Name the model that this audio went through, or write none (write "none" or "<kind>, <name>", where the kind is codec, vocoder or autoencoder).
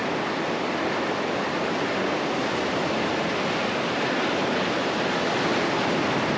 none